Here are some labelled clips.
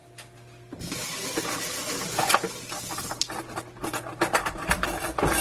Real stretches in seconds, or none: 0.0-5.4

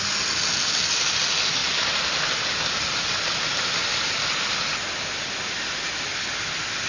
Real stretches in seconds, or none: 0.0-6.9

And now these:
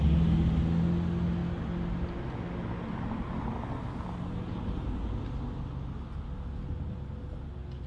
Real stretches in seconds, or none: 0.0-7.9

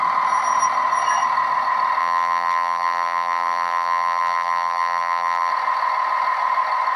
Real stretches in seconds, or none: 0.0-2.0; 5.5-7.0